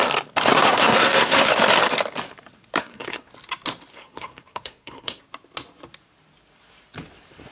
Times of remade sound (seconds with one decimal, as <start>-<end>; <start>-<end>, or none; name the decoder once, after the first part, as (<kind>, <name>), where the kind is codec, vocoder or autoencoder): 0.5-1.5 (codec, SNAC); 2.8-3.3; 3.9-5.2